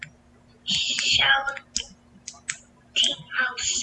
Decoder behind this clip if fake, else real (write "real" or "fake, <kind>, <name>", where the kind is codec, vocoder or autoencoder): real